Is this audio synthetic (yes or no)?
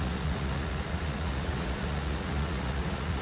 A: yes